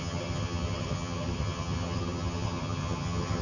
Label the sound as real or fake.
fake